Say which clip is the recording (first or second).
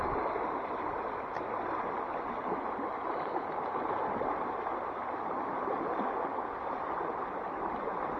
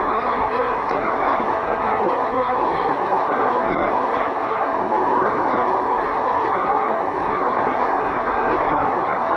first